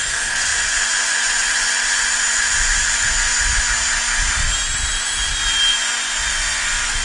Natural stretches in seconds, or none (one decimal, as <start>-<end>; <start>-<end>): 3.3-5.7